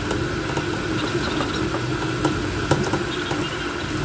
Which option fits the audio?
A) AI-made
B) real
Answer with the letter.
B